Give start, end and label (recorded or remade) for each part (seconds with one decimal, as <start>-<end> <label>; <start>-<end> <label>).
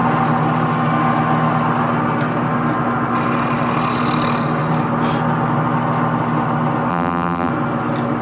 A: 0.0-6.9 recorded; 6.9-7.5 remade; 7.5-8.2 recorded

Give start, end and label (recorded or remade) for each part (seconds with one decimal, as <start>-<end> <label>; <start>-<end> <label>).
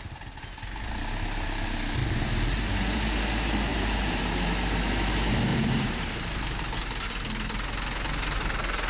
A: 0.0-2.0 recorded; 2.0-3.2 remade; 3.2-3.7 recorded; 3.7-4.2 remade; 4.2-5.5 recorded; 5.5-6.6 remade; 6.6-8.9 recorded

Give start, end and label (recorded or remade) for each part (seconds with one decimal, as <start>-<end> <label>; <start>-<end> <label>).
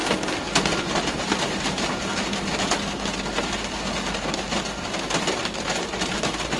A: 0.0-0.8 recorded; 0.8-2.1 remade; 2.1-4.6 recorded; 4.6-6.6 remade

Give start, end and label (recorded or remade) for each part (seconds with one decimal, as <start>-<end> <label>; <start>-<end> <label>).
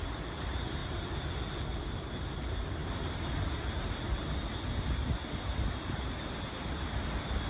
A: 0.0-7.5 recorded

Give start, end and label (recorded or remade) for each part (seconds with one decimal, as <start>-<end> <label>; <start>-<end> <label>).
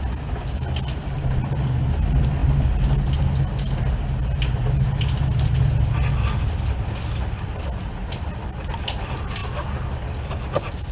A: 0.0-10.9 recorded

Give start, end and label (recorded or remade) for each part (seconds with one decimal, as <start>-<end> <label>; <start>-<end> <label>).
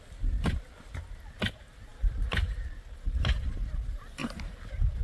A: 0.0-4.2 recorded; 4.2-5.0 remade